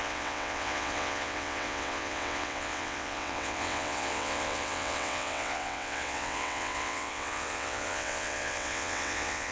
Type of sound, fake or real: fake